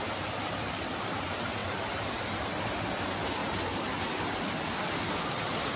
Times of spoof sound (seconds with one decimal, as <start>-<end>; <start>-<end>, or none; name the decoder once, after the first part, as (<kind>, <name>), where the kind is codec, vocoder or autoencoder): none